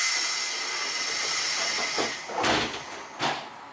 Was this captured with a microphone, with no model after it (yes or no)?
yes